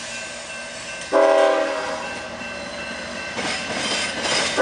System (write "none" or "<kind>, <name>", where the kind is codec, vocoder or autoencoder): none